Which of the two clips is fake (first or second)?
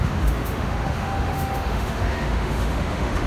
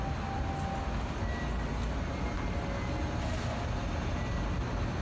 first